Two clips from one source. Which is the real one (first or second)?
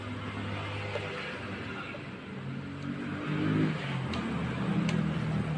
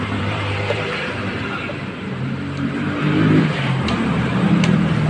first